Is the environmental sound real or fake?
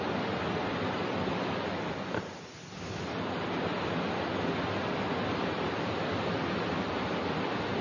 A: real